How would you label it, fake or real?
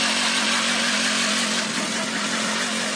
real